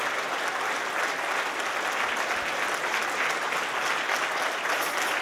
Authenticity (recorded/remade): recorded